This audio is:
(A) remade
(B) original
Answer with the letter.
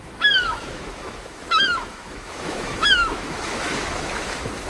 A